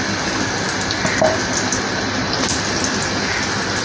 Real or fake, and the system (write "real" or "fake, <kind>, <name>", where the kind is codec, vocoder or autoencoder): real